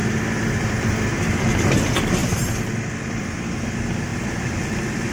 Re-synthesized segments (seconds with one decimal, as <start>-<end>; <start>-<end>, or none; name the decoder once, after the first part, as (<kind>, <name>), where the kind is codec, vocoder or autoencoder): 4.1-5.1 (vocoder, BigVGAN v2)